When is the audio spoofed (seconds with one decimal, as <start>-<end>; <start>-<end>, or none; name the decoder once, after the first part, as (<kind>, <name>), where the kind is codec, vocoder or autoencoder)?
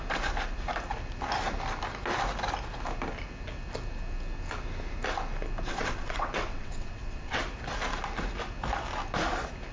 5.7-7.4 (vocoder, WaveNeXt)